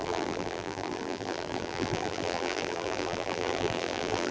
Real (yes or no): no